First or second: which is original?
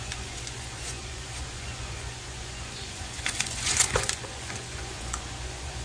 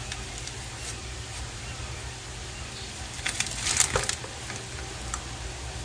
second